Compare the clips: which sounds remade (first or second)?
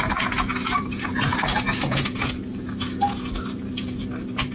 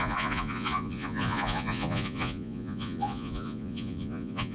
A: second